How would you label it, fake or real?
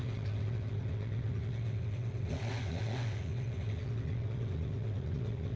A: fake